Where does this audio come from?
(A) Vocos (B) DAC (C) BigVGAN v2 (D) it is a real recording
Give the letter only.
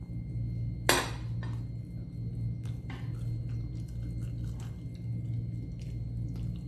D